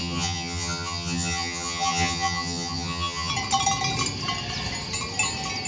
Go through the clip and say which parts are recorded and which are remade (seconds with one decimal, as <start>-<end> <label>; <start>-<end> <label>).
0.0-3.3 remade; 3.3-5.7 recorded